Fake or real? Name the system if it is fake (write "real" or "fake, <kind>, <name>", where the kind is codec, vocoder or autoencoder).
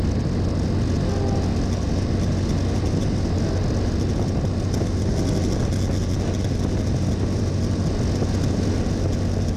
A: real